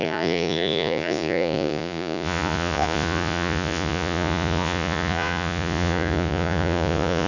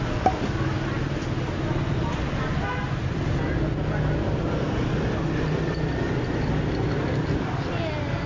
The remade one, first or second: first